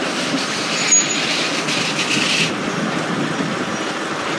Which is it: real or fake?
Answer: real